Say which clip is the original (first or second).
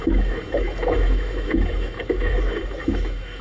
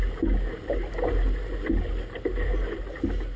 second